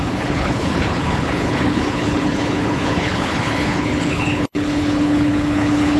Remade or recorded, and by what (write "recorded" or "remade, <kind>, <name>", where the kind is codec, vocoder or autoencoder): remade, codec, HILCodec